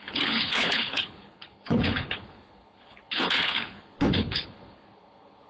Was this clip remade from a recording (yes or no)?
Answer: yes